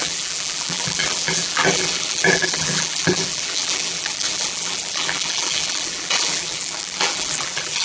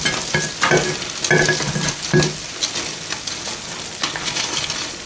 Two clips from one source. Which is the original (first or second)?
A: second